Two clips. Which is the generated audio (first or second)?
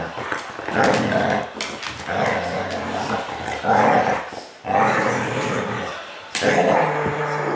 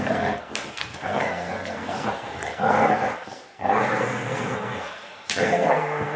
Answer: second